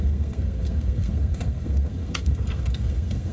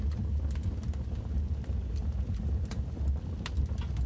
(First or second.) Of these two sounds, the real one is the second